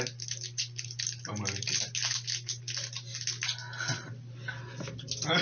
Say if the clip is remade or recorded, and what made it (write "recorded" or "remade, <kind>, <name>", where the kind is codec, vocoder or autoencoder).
recorded